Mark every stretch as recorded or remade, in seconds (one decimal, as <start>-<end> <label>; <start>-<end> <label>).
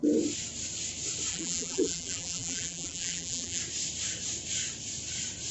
0.0-1.3 recorded; 1.3-3.6 remade; 3.6-5.5 recorded